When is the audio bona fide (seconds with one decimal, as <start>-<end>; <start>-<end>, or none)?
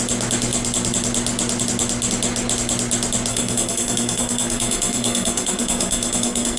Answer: 0.0-3.3